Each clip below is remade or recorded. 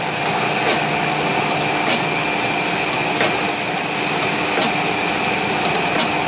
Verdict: recorded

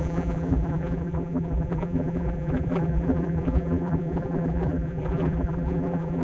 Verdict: remade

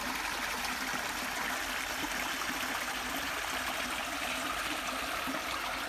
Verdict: recorded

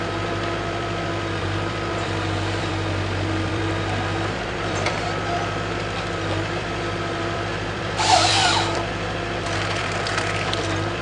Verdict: remade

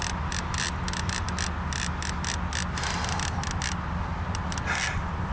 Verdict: recorded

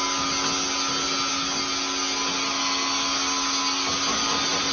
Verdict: recorded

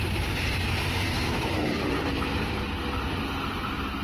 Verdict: remade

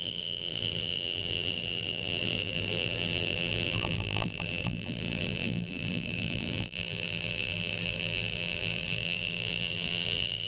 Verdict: remade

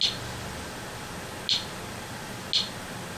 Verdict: recorded